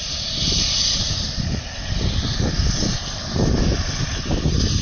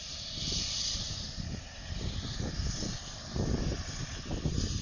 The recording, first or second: second